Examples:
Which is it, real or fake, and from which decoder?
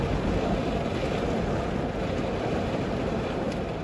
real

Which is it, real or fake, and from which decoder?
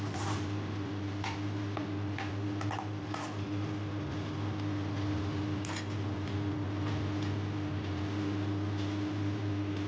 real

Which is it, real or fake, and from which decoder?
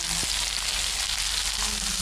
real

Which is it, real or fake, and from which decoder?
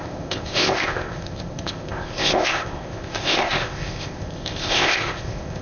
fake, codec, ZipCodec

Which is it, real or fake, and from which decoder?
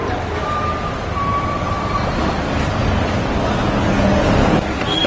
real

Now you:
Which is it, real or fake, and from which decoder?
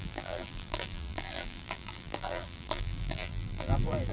fake, vocoder, BigVGAN v2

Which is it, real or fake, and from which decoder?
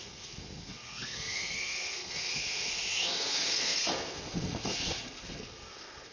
fake, codec, SNAC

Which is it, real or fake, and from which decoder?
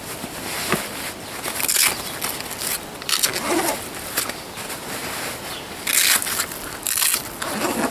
real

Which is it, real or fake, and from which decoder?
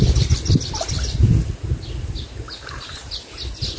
real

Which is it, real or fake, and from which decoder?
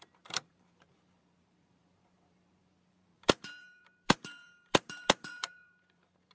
fake, vocoder, BigVGAN v2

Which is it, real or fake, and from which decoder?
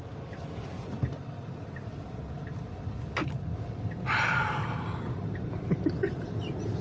real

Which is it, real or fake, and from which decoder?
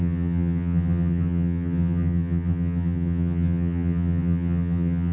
fake, vocoder, HiFi-GAN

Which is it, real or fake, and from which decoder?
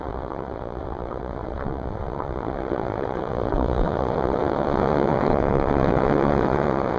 fake, vocoder, WaveNeXt